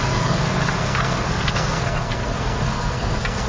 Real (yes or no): no